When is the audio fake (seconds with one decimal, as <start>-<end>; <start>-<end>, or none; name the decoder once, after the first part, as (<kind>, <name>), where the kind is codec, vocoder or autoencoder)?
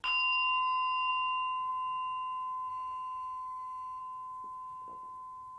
2.7-4.0 (autoencoder, DAC-VAE)